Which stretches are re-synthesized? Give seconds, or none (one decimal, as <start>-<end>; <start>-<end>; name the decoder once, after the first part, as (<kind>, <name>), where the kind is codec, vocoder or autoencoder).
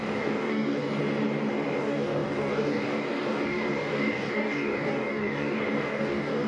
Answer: 0.0-1.0 (codec, DAC); 1.8-6.5